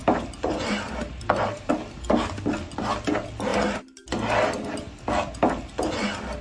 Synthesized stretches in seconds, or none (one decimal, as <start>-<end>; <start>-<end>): 0.0-1.7